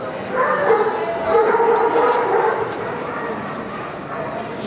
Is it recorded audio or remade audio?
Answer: recorded